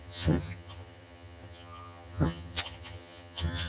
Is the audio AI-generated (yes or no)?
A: yes